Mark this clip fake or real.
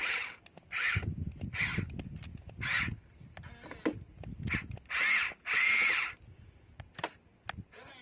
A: real